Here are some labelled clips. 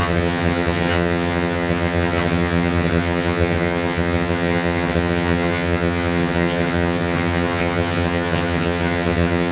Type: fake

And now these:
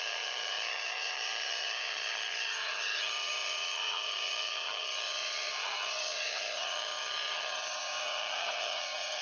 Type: fake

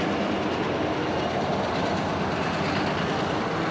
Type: real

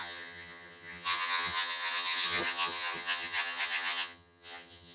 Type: fake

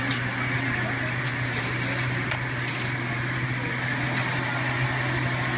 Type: real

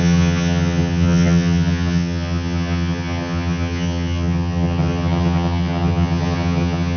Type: fake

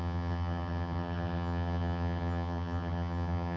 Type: fake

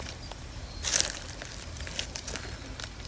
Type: real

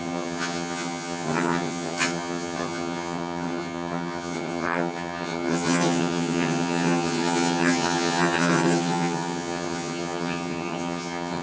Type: fake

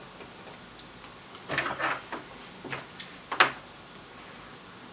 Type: real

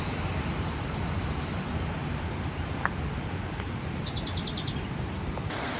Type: real